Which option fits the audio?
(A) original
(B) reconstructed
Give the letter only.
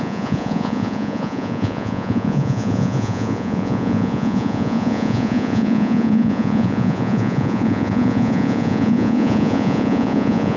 B